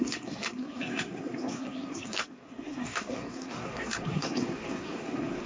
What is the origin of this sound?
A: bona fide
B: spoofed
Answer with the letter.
B